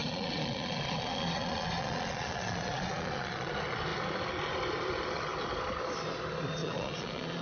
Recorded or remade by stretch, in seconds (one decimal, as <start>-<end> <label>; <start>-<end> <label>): 0.0-3.5 remade; 3.5-6.6 recorded; 6.6-7.4 remade